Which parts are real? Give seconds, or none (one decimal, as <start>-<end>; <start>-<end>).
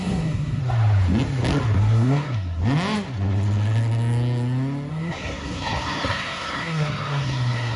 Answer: 0.6-1.8; 2.6-4.9